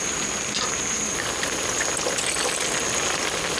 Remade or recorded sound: remade